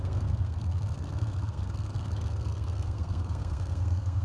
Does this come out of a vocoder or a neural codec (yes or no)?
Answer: yes